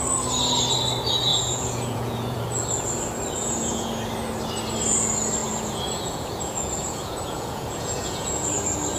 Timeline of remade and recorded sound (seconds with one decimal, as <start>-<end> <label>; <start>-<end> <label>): 0.0-1.3 recorded; 1.3-2.4 remade; 2.4-3.4 recorded; 3.4-4.0 remade; 4.0-5.4 recorded; 5.4-8.5 remade; 8.5-9.0 recorded